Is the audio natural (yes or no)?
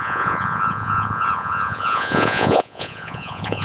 no